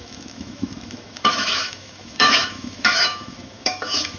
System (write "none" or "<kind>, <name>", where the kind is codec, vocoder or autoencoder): autoencoder, DAC-VAE